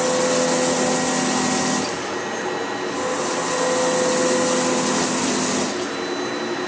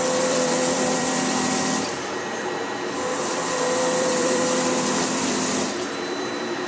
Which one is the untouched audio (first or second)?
first